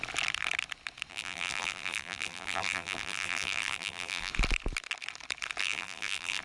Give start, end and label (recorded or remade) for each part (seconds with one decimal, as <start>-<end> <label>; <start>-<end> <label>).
0.0-1.1 recorded; 1.1-4.3 remade; 4.3-5.6 recorded; 5.6-6.4 remade